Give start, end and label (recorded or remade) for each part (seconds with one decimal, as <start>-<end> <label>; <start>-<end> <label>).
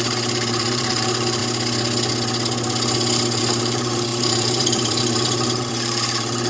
0.0-1.4 remade; 1.4-3.4 recorded; 3.4-6.5 remade